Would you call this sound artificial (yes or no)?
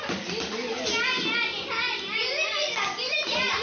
no